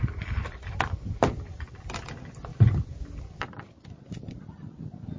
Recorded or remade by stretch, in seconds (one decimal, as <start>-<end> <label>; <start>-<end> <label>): 0.0-2.5 remade; 2.5-3.2 recorded; 3.2-5.2 remade